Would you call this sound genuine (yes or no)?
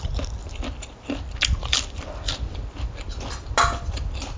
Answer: yes